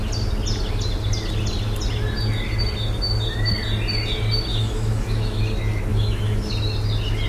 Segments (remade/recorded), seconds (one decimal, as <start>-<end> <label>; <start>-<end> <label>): 0.0-4.5 recorded; 4.5-5.4 remade; 5.4-5.9 recorded; 5.9-6.5 remade; 6.5-7.3 recorded